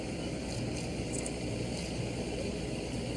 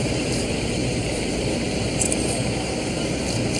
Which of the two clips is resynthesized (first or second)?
second